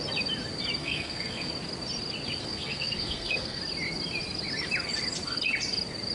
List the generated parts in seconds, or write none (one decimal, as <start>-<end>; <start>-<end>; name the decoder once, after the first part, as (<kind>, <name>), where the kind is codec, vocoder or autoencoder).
0.8-1.5 (codec, SNAC); 2.4-3.6